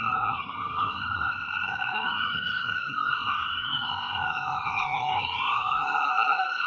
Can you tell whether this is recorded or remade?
remade